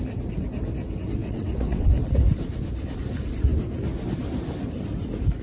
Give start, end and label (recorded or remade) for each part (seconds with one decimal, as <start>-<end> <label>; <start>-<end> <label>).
0.0-1.2 recorded; 1.2-1.9 remade; 1.9-5.4 recorded